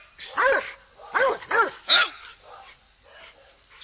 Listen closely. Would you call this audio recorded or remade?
recorded